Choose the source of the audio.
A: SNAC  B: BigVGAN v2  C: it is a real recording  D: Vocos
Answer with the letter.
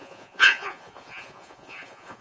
D